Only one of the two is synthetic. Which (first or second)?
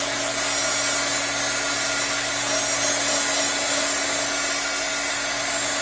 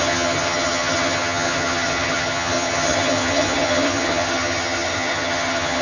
second